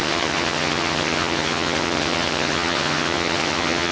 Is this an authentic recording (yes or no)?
no